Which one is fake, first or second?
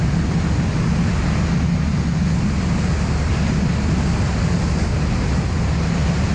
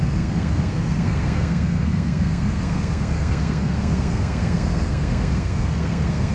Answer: second